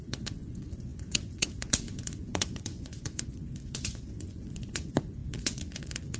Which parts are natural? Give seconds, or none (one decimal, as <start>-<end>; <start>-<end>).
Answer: none